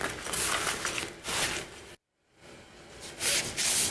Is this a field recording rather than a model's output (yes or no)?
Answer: yes